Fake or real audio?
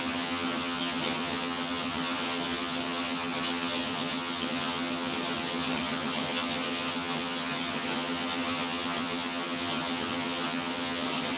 fake